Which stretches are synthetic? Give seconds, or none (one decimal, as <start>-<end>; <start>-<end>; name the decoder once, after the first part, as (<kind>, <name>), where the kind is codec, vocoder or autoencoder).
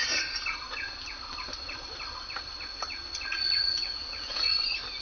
none